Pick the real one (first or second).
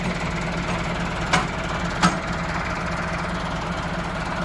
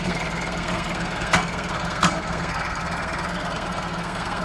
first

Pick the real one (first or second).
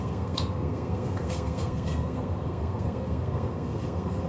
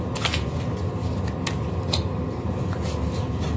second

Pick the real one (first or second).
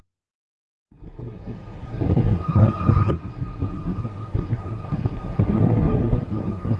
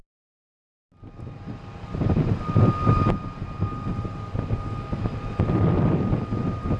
second